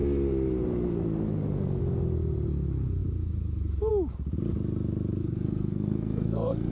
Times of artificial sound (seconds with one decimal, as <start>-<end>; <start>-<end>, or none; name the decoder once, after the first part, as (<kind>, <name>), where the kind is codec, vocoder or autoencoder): 5.2-6.7 (codec, SNAC)